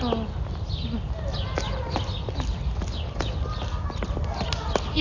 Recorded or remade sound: recorded